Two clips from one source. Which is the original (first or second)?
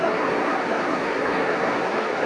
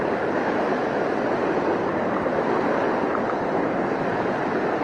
second